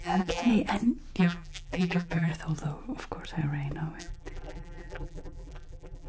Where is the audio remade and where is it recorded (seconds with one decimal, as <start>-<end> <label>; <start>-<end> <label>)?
0.0-0.5 remade; 0.5-1.2 recorded; 1.2-2.3 remade; 2.3-4.0 recorded; 4.0-6.1 remade